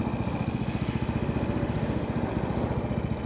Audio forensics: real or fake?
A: real